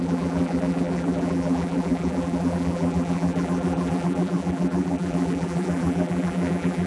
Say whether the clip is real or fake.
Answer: fake